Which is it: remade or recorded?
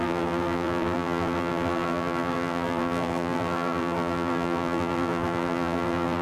remade